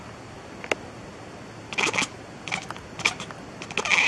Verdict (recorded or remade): recorded